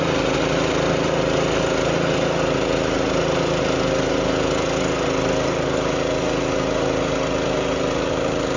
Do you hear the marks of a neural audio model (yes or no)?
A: no